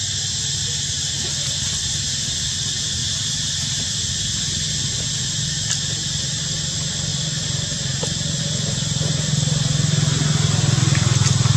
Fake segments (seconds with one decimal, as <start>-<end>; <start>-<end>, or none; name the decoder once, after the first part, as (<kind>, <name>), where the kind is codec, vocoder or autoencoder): 3.0-4.1 (vocoder, BigVGAN v2)